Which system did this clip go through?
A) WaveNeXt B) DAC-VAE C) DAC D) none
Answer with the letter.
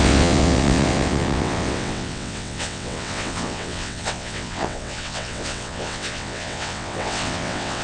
A